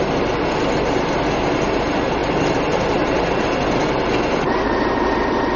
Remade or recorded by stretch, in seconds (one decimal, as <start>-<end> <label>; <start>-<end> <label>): 0.0-2.2 recorded; 2.2-3.2 remade; 3.2-5.6 recorded